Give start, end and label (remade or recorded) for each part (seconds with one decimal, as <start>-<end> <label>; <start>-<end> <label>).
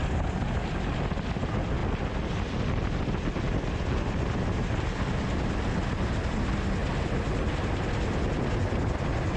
0.0-9.4 recorded